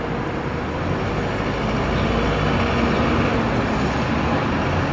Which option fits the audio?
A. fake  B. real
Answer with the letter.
B